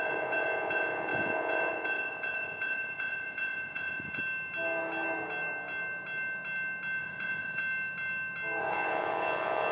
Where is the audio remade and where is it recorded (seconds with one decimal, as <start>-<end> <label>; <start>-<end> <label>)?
0.0-4.2 remade; 4.2-7.0 recorded; 7.0-7.6 remade; 7.6-8.6 recorded; 8.6-9.7 remade